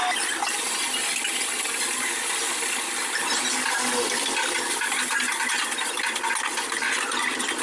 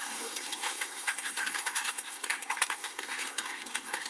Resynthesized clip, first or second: second